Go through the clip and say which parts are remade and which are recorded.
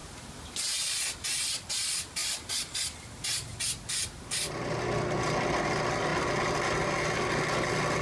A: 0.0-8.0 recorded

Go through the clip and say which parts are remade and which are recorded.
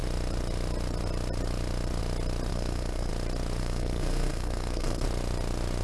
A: 0.0-2.5 recorded; 2.5-3.1 remade; 3.1-3.6 recorded; 3.6-5.0 remade; 5.0-5.8 recorded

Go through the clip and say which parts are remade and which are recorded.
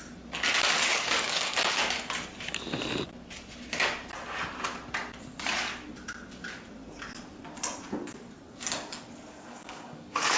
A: 0.0-0.9 recorded; 0.9-1.8 remade; 1.8-9.3 recorded; 9.3-10.4 remade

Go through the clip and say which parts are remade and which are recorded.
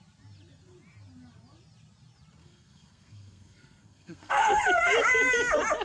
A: 0.0-2.4 recorded; 2.4-4.6 remade; 4.6-5.8 recorded